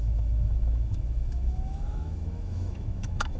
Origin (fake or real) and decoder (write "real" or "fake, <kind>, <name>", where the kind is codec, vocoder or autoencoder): fake, autoencoder, DAC-VAE